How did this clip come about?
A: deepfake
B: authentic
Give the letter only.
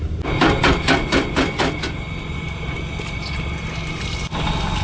B